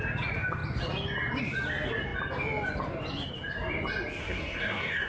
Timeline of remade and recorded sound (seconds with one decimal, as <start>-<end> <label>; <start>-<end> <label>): 0.0-4.2 recorded; 4.2-5.1 remade